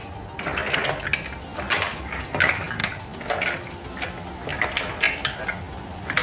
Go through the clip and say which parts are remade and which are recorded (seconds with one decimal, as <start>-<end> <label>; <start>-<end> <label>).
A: 0.0-1.8 recorded; 1.8-2.8 remade; 2.8-5.7 recorded; 5.7-6.2 remade